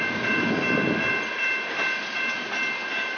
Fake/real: real